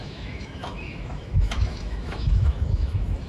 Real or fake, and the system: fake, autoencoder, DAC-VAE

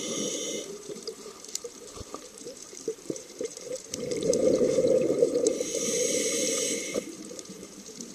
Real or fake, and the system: fake, vocoder, BigVGAN v2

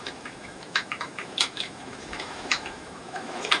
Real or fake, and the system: fake, autoencoder, DAC-VAE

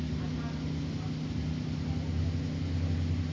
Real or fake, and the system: real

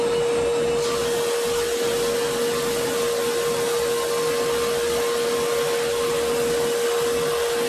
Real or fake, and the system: real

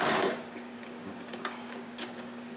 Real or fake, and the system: fake, codec, DAC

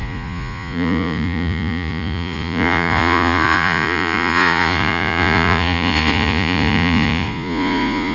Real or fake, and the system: fake, vocoder, Vocos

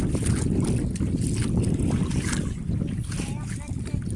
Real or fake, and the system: real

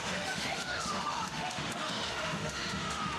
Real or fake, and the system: fake, autoencoder, DAC-VAE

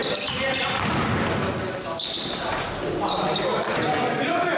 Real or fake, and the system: real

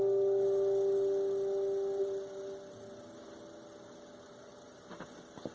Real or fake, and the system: real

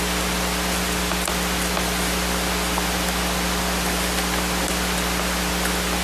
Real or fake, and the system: real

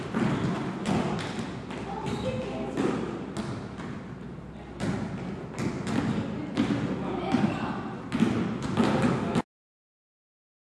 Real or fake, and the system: real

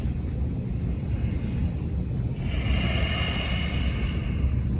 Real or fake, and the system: real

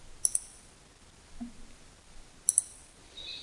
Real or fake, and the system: real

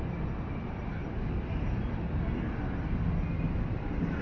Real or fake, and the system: real